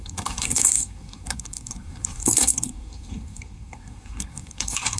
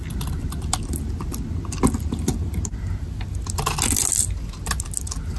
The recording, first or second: second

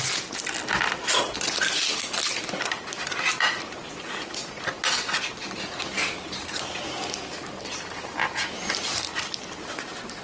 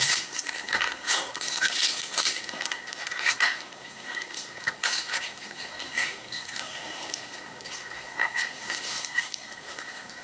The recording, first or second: first